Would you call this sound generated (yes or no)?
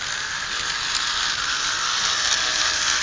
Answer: no